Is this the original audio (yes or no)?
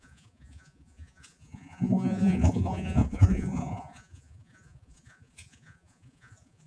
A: no